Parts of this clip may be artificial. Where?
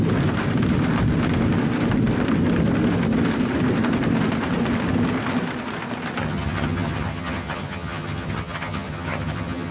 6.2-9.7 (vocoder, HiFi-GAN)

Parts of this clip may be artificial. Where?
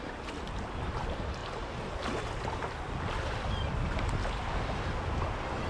none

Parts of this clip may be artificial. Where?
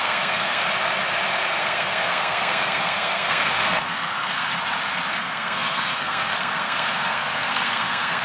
0.0-0.6 (codec, SNAC); 1.6-4.5; 5.1-8.2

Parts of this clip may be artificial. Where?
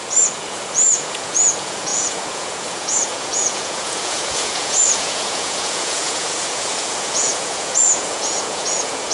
0.0-9.1 (vocoder, Vocos)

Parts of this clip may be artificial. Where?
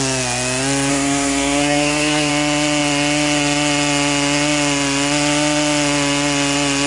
0.9-2.3 (codec, SNAC)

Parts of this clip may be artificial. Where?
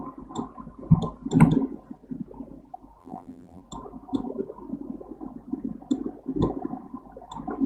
3.0-3.6 (vocoder, BigVGAN v2)